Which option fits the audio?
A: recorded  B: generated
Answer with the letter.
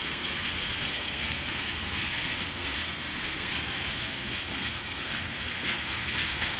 B